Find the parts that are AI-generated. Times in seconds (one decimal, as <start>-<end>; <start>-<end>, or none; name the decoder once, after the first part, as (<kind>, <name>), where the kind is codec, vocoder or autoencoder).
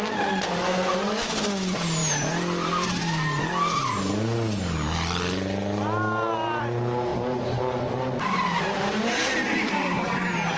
none